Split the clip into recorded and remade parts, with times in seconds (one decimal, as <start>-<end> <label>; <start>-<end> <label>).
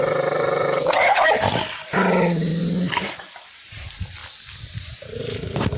0.0-2.5 remade; 2.5-3.1 recorded; 3.1-4.2 remade; 4.2-5.2 recorded; 5.2-5.8 remade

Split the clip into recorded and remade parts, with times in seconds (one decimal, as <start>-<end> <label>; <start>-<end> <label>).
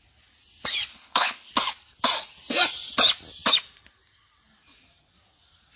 0.0-0.9 recorded; 0.9-1.5 remade; 1.5-5.8 recorded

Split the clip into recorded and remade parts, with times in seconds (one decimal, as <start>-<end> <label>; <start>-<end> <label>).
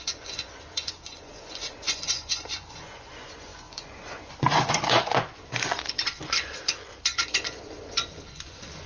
0.0-8.9 remade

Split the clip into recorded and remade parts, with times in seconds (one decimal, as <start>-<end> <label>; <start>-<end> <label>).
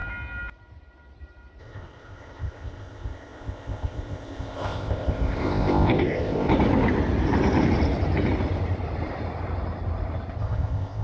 0.0-1.6 recorded; 1.6-6.5 remade; 6.5-10.4 recorded; 10.4-11.0 remade